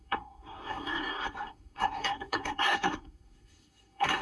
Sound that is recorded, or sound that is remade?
remade